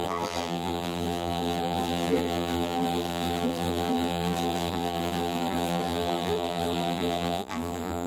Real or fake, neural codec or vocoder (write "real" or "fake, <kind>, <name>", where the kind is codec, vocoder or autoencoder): fake, vocoder, BigVGAN v2